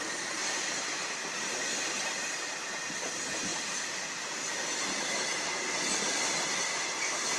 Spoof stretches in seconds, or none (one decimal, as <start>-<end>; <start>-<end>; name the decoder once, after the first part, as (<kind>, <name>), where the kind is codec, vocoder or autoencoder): 0.0-3.5 (vocoder, BigVGAN v2); 7.0-7.4